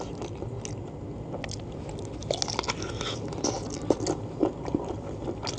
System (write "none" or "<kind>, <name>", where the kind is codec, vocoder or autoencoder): none